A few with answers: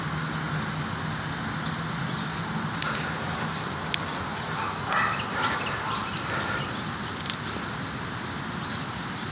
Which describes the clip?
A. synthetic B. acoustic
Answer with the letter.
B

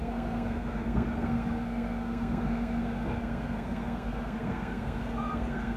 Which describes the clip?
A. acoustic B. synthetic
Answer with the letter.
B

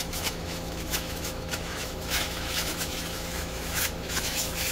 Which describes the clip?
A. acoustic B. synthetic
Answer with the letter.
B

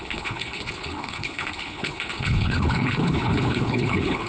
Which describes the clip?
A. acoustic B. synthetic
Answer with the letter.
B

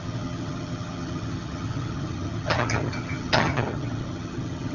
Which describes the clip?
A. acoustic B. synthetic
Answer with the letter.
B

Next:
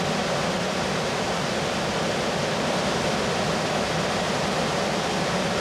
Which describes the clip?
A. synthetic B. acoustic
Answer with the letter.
B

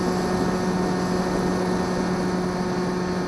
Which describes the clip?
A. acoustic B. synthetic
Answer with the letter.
A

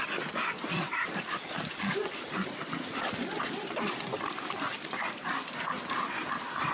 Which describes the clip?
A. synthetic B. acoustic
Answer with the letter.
B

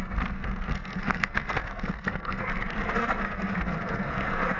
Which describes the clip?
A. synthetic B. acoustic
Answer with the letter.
A